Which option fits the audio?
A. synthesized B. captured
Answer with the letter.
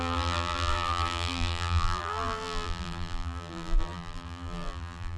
A